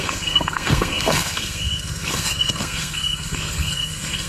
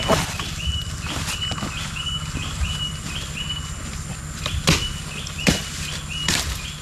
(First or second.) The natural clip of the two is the second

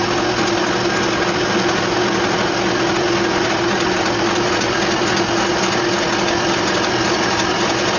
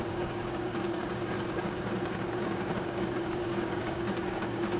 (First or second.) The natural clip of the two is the first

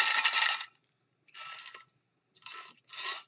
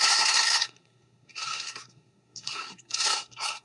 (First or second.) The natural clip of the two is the first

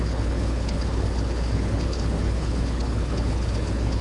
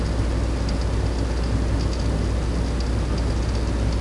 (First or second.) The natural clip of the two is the second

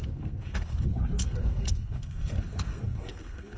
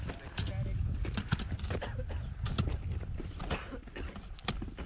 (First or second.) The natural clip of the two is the second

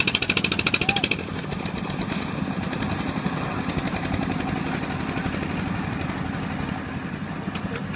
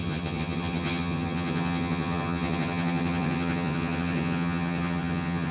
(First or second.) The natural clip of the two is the first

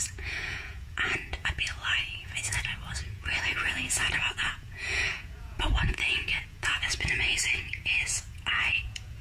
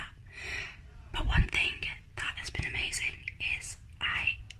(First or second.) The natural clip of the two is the second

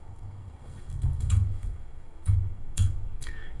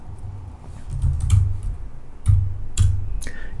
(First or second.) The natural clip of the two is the second